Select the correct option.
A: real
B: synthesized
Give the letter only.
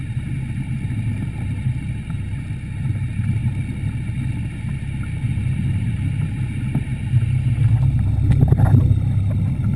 A